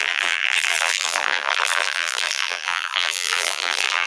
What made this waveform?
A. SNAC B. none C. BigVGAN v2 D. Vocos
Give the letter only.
C